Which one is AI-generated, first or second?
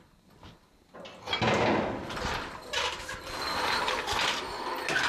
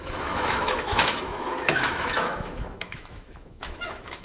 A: second